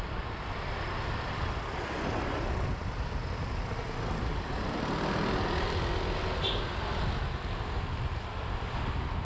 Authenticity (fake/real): real